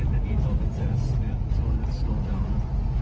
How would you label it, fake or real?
real